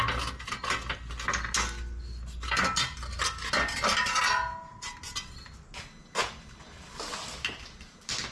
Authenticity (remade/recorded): recorded